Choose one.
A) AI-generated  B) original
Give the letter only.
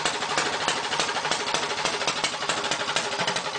B